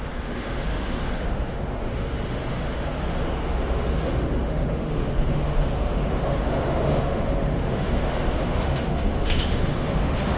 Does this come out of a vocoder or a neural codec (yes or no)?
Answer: yes